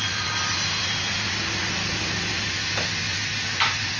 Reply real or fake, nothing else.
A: real